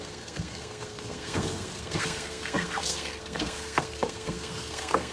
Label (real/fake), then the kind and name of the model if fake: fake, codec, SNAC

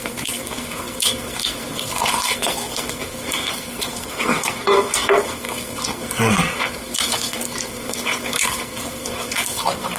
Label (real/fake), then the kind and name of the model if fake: fake, codec, SNAC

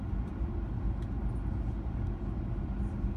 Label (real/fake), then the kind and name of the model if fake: real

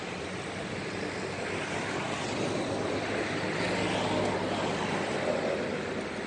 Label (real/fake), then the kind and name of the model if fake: real